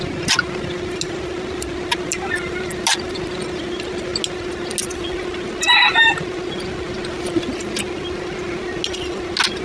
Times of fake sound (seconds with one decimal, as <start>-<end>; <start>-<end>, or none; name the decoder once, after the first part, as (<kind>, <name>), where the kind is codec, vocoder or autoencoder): none